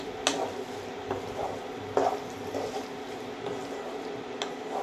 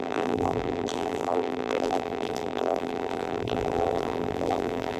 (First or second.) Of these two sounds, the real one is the first